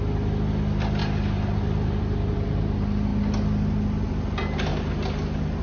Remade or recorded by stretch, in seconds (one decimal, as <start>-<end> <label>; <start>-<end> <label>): 0.0-1.0 recorded; 1.0-2.6 remade; 2.6-5.6 recorded